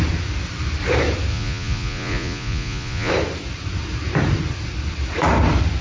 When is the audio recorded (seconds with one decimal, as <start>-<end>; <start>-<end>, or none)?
0.0-1.3; 3.1-5.8